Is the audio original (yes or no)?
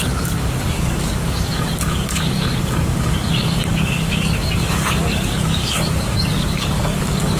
no